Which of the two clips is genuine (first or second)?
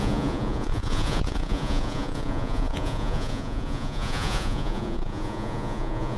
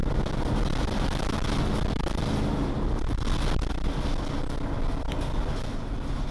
second